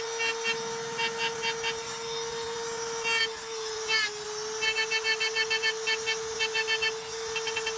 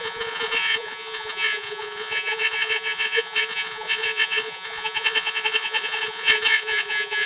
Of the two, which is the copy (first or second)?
second